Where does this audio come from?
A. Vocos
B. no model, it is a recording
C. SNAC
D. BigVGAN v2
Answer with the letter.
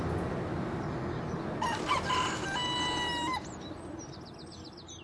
B